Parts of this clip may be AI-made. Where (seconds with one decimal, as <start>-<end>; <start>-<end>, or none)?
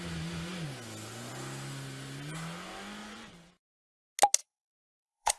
3.0-3.5; 4.4-5.4